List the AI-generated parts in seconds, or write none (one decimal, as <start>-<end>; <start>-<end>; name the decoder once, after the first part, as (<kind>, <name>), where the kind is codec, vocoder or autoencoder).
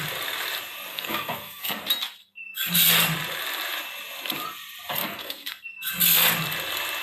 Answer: 0.9-1.8 (codec, SNAC); 2.2-2.7; 5.0-5.9